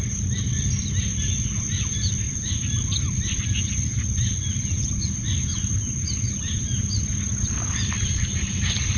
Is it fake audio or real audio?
real